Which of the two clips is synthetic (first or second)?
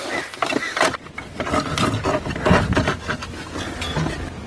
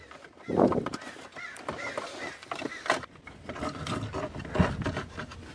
second